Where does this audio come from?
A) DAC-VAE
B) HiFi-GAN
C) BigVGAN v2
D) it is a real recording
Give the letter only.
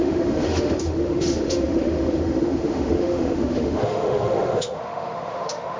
A